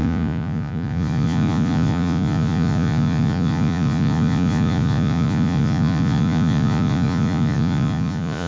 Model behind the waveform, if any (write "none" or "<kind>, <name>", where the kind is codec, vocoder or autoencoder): vocoder, Vocos